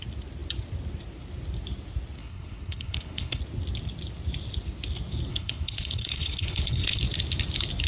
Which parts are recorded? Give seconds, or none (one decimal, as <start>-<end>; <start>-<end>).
0.0-2.2; 3.4-5.3; 7.0-7.9